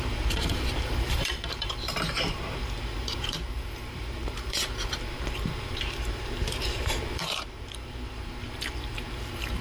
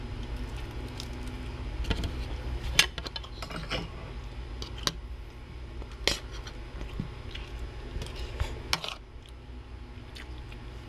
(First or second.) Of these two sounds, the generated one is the first